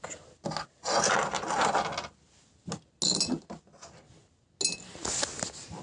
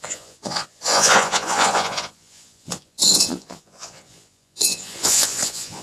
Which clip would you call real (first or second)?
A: first